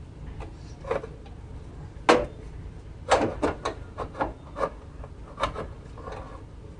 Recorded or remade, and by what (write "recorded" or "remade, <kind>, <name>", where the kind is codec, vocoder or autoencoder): recorded